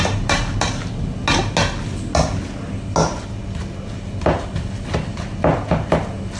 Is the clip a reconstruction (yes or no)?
no